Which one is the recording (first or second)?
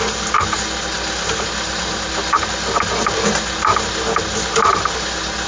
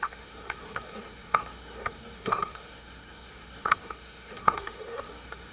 first